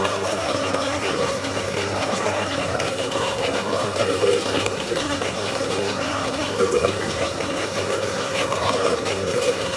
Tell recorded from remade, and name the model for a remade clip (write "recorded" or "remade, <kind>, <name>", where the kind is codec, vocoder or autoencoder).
remade, codec, SNAC